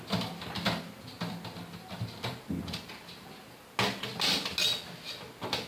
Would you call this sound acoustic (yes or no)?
yes